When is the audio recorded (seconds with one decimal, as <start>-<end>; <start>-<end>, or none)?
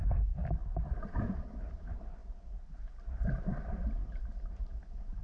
0.0-5.2